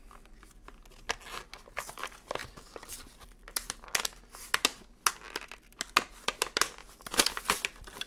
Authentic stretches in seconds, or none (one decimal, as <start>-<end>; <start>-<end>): 0.0-8.1